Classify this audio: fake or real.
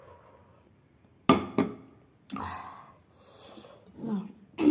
real